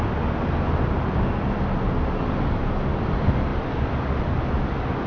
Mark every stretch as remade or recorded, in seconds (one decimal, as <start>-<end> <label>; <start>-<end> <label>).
0.0-5.1 recorded